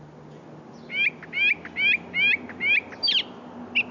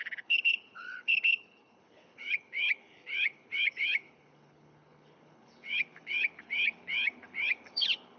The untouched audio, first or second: first